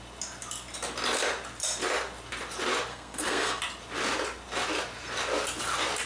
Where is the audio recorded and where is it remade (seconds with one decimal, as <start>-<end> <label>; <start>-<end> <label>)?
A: 0.0-2.9 recorded; 2.9-3.6 remade; 3.6-6.1 recorded